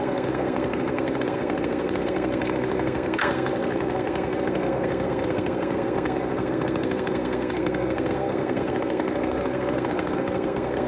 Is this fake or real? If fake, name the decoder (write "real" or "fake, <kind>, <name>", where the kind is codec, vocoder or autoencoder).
fake, codec, SNAC